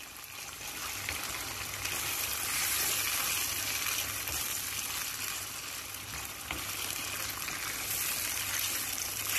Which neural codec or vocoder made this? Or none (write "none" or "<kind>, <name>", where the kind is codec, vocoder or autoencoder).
none